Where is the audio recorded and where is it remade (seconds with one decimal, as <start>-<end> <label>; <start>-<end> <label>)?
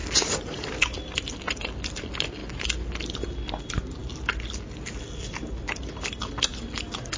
0.0-7.2 recorded